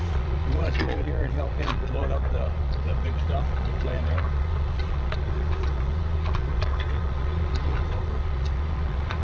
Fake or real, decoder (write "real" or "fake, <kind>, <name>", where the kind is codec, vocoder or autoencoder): fake, vocoder, Vocos